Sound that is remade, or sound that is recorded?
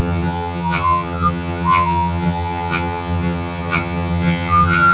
remade